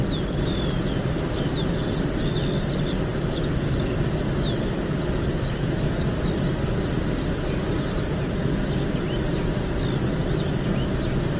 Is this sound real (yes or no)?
yes